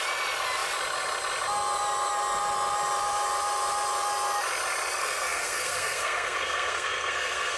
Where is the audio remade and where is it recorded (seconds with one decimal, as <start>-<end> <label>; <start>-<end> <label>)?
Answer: 0.0-5.0 recorded; 5.0-7.6 remade